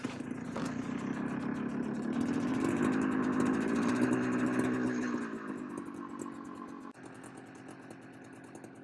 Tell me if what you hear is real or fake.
real